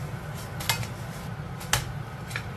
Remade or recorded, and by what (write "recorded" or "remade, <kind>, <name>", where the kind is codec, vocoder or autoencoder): recorded